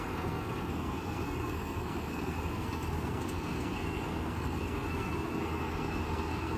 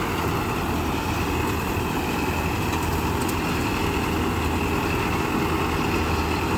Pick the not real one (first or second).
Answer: first